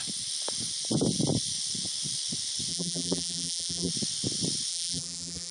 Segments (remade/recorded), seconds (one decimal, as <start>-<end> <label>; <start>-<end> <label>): 0.0-2.7 recorded; 2.7-3.9 remade; 3.9-4.7 recorded; 4.7-5.5 remade